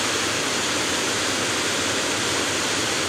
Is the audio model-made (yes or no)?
no